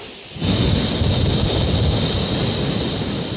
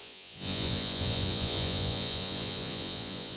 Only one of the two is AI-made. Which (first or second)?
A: second